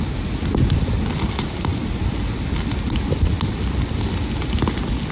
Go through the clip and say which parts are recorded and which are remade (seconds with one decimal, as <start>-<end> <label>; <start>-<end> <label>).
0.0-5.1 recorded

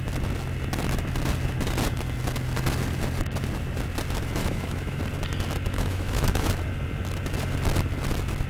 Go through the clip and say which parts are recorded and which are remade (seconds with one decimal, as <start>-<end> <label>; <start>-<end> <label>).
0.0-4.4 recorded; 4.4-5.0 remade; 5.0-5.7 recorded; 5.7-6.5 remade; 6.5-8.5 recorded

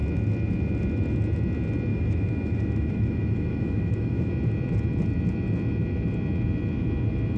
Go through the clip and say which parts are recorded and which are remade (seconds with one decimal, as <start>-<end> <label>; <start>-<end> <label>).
0.0-1.9 recorded; 1.9-4.3 remade; 4.3-7.4 recorded

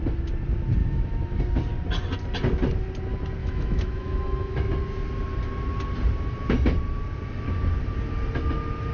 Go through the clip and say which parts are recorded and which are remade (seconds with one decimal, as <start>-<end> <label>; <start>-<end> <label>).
0.0-0.8 recorded; 0.8-1.4 remade; 1.4-3.4 recorded; 3.4-4.7 remade; 4.7-8.9 recorded

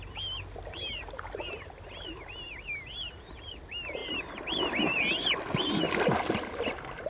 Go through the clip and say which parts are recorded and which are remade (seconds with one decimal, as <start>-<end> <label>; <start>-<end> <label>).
0.0-7.1 recorded

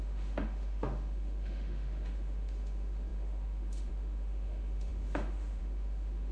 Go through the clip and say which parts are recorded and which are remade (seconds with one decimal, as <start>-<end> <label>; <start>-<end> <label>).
0.0-6.3 remade